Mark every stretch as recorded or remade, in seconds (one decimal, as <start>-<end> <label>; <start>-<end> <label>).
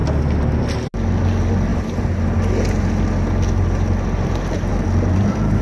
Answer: 0.0-1.7 recorded; 1.7-2.9 remade; 2.9-4.7 recorded; 4.7-5.6 remade